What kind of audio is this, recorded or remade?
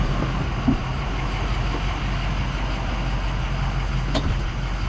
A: recorded